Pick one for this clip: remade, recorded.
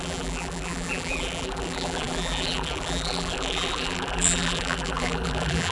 remade